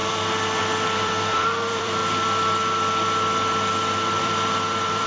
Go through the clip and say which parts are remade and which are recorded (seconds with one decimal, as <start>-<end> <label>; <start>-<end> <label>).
0.0-2.0 remade; 2.0-4.2 recorded; 4.2-5.1 remade